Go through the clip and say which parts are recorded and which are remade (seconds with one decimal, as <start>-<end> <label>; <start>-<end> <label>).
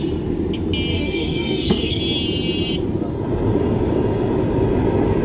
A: 0.0-0.9 recorded; 0.9-2.0 remade; 2.0-5.2 recorded